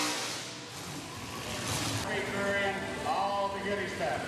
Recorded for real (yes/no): yes